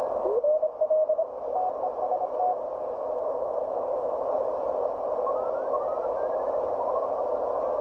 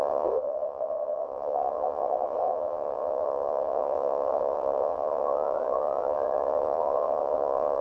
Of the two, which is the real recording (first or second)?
first